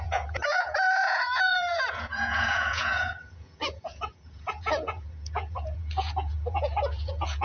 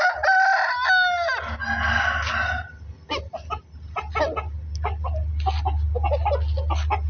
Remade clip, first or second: first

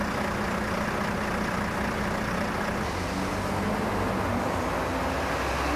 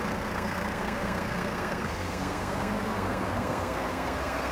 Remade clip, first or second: second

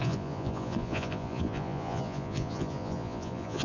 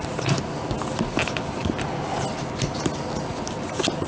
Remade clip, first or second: first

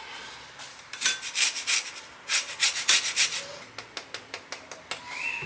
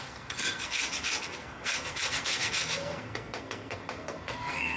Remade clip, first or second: second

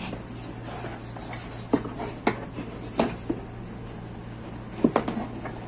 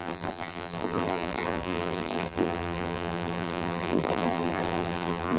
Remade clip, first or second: second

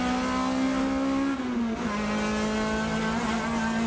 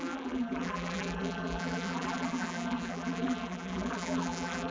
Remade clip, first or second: second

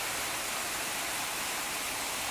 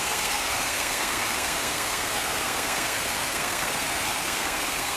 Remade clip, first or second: second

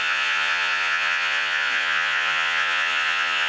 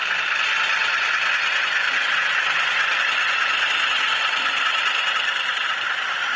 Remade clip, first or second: first